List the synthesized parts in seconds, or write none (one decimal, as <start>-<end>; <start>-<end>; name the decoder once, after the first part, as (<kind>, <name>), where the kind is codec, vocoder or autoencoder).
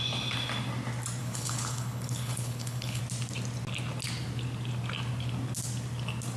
1.2-3.0 (codec, HILCodec)